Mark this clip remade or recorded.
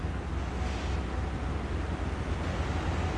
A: recorded